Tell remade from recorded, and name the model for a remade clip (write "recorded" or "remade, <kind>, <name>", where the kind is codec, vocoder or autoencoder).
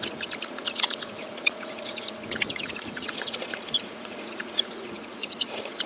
remade, vocoder, Vocos